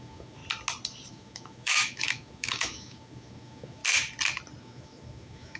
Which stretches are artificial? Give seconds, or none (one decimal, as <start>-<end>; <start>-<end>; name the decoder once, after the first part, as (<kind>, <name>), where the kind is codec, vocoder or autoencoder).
0.0-0.4 (autoencoder, DAC-VAE); 1.1-3.8; 4.6-5.6